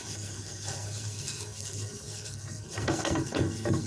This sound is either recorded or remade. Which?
remade